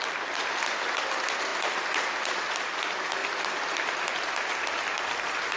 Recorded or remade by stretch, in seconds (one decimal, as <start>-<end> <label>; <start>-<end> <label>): 0.0-5.6 recorded